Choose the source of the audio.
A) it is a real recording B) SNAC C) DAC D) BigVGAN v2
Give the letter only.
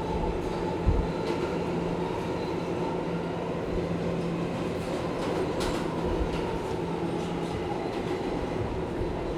A